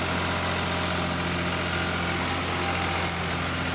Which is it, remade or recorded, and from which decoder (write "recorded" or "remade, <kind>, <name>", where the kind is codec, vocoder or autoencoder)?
recorded